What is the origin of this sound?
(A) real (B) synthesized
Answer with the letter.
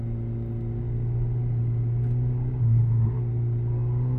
A